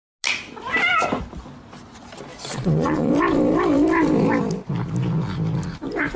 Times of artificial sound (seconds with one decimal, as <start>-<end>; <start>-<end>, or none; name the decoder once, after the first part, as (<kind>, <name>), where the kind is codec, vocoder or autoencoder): 2.3-3.1 (vocoder, Vocos)